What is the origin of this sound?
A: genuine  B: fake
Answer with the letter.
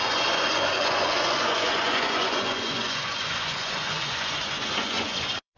B